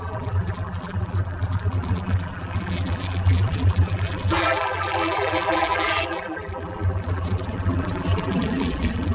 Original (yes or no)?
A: no